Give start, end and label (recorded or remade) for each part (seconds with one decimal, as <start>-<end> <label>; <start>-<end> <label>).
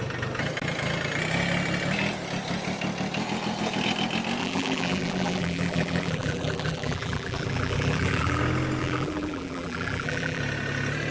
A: 0.0-4.4 recorded; 4.4-8.4 remade; 8.4-8.8 recorded; 8.8-10.4 remade; 10.4-11.1 recorded